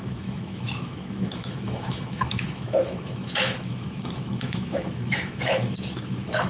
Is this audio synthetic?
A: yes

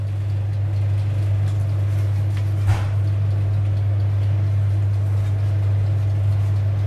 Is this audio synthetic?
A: no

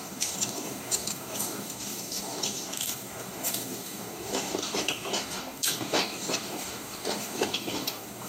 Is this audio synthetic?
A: yes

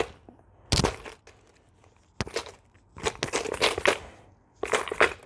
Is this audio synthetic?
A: no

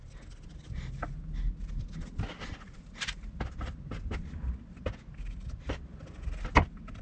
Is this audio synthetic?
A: no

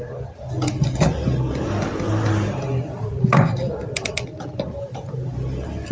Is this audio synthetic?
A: no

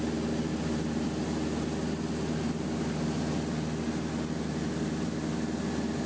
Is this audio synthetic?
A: no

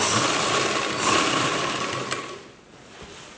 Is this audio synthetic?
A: no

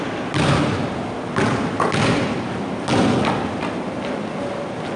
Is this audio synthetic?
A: no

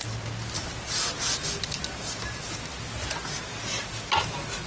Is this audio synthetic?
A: no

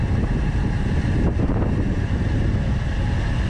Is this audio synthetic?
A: no